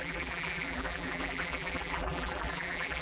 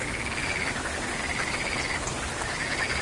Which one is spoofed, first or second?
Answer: first